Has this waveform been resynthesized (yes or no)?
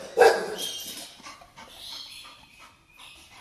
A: yes